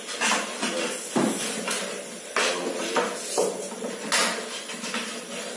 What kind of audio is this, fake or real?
real